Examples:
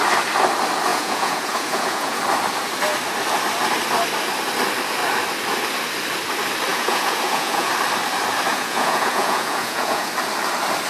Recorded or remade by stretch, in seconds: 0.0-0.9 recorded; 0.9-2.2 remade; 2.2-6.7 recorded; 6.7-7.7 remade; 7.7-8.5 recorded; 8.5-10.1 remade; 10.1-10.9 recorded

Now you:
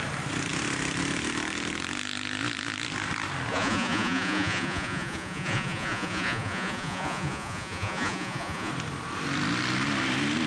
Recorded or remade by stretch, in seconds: 0.0-3.5 recorded; 3.5-8.7 remade; 8.7-10.5 recorded

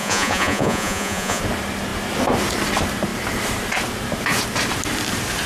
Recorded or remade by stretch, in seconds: 0.0-1.4 remade; 1.4-5.5 recorded

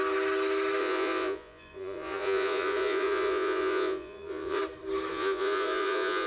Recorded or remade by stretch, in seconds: 0.0-0.8 recorded; 0.8-4.6 remade; 4.6-5.1 recorded; 5.1-6.3 remade